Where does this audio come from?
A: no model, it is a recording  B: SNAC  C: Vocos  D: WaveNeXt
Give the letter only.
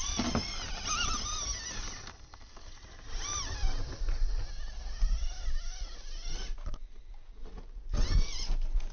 A